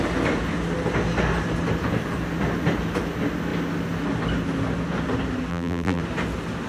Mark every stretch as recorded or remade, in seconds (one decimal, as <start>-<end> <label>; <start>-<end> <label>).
0.0-5.5 recorded; 5.5-6.0 remade; 6.0-6.7 recorded